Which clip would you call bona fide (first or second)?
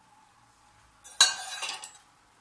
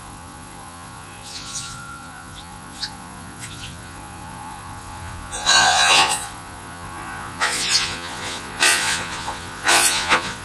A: first